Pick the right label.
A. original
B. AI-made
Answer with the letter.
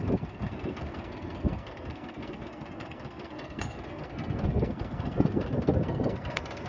B